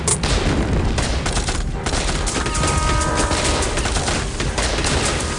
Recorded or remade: remade